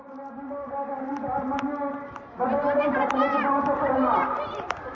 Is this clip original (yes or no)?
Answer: yes